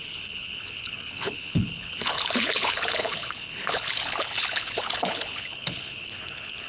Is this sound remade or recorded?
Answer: remade